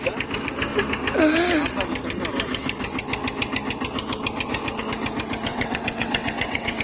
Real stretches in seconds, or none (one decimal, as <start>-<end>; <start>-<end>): 0.0-5.5